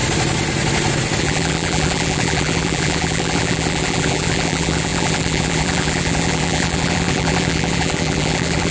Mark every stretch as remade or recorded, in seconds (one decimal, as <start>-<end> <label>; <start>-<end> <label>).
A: 0.0-1.2 recorded; 1.2-8.7 remade